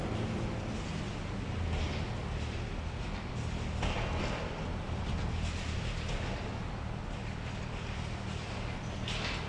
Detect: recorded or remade recorded